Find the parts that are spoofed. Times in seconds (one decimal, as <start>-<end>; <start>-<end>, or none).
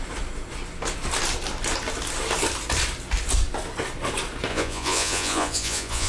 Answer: 4.5-6.1